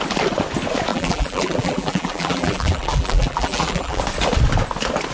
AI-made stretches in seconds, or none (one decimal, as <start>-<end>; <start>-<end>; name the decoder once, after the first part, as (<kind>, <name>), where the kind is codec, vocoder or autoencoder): 0.9-4.0 (vocoder, BigVGAN v2)